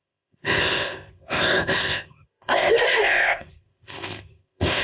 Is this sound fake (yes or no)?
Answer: yes